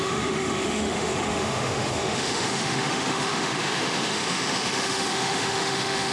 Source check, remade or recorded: remade